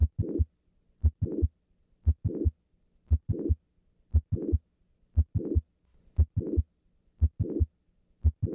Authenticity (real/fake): real